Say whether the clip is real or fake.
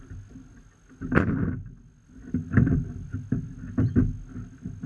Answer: real